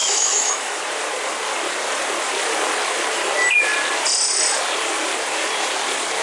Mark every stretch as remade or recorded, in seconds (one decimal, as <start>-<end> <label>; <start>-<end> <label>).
0.0-0.8 remade; 0.8-6.2 recorded